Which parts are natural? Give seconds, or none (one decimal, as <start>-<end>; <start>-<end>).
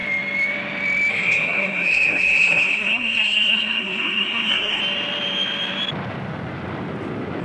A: 0.0-1.1; 4.8-7.4